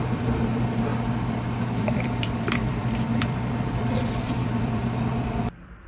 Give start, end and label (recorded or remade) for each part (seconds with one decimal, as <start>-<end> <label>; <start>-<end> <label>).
0.0-0.9 remade; 0.9-1.8 recorded; 1.8-5.9 remade